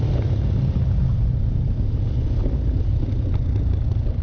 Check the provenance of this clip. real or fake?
real